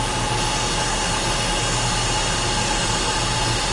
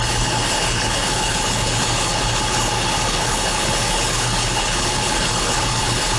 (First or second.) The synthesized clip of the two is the second